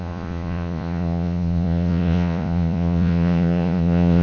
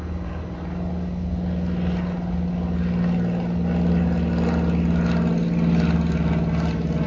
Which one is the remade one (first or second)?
first